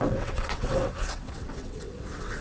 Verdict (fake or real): fake